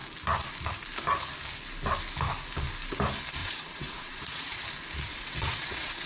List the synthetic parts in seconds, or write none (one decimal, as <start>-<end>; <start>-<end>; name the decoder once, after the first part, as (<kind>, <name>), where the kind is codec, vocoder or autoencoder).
3.4-4.6 (vocoder, WaveNeXt); 5.1-6.1